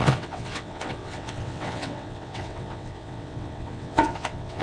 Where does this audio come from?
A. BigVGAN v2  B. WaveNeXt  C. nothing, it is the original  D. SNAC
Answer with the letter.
B